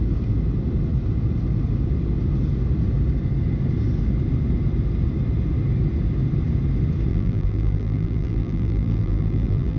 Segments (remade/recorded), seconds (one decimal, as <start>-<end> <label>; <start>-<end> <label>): 0.0-7.1 recorded; 7.1-9.8 remade

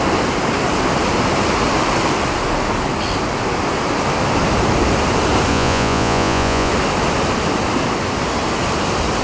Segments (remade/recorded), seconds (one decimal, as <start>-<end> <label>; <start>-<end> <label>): 0.0-5.5 recorded; 5.5-6.7 remade; 6.7-9.2 recorded

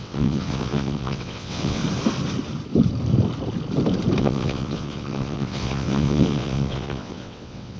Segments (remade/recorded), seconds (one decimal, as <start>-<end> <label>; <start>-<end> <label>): 0.0-1.8 remade; 1.8-4.2 recorded; 4.2-7.8 remade

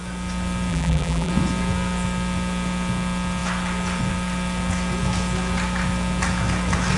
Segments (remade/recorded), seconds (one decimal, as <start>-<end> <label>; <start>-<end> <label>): 0.0-0.7 recorded; 0.7-1.3 remade; 1.3-7.0 recorded

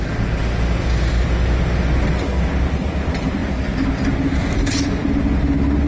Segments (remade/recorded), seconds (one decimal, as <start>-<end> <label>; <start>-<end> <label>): 0.0-3.4 recorded; 3.4-5.2 remade; 5.2-5.9 recorded

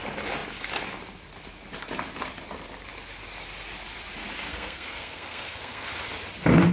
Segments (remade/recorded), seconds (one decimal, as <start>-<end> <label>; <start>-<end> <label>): 0.0-4.5 recorded; 4.5-5.9 remade; 5.9-6.7 recorded

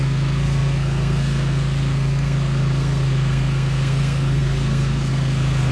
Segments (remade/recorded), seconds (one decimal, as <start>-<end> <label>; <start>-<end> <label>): 0.0-5.7 remade